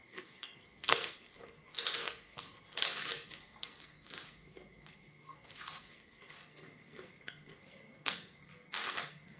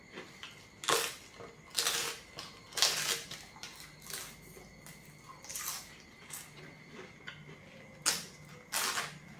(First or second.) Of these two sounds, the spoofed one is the first